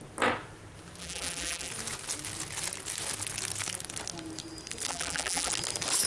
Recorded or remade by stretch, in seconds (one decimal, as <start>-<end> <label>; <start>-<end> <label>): 0.0-1.0 recorded; 1.0-1.7 remade; 1.7-4.9 recorded; 4.9-5.5 remade; 5.5-6.1 recorded